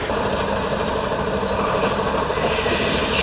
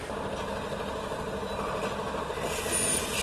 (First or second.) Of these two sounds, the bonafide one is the second